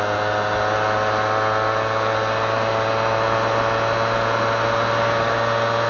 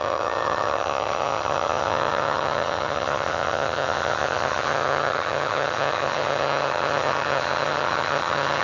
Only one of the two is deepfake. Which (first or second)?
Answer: second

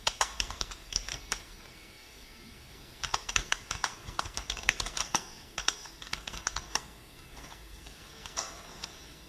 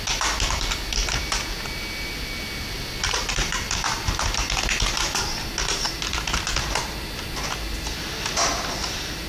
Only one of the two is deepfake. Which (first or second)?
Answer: first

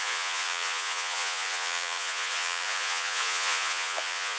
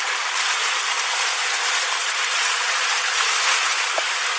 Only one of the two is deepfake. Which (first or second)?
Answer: first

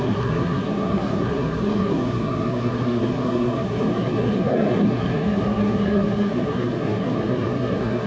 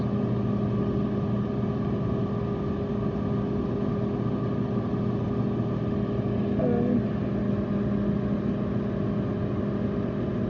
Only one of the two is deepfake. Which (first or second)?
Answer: first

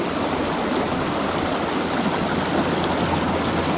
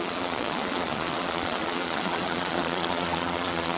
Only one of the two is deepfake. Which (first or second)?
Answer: second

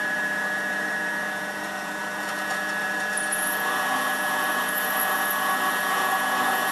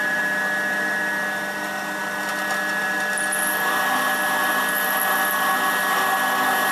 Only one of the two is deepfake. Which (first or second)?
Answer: first